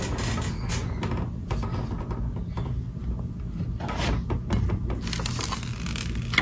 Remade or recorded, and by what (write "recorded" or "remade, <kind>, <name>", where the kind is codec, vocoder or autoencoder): recorded